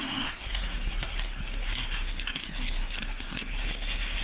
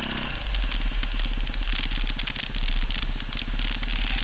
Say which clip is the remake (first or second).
first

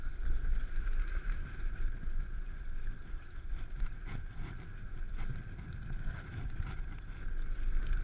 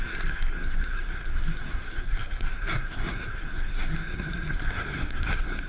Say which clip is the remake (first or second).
second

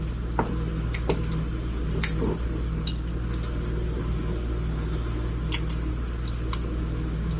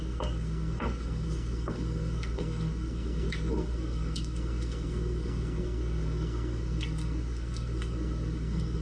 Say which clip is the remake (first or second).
second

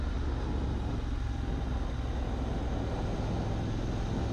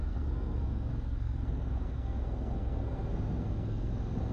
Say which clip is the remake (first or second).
second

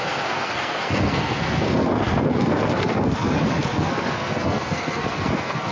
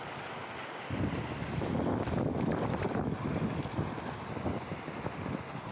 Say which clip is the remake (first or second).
first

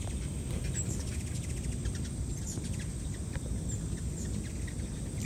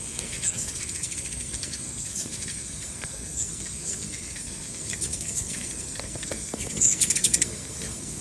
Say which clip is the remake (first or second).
second